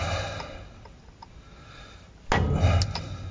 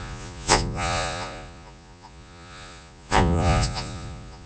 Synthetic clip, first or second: second